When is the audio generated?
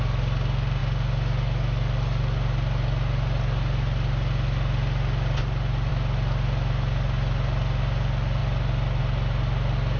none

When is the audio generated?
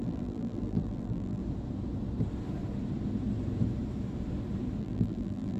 0.0-1.4; 4.8-5.6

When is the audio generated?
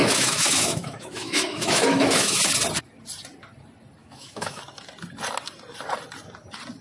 0.0-2.4; 4.0-4.6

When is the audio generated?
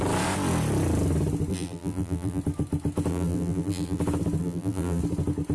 1.5-2.4; 3.1-4.0; 4.4-5.0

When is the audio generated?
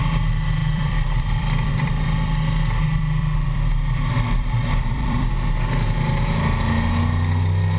0.6-5.3